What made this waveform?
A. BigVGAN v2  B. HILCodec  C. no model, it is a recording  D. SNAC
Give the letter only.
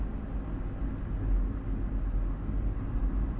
C